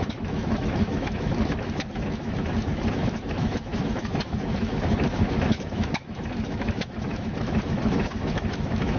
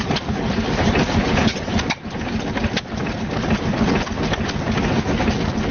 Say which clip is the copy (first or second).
first